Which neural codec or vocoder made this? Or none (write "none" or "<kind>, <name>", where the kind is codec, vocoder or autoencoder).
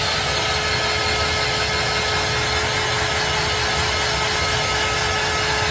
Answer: none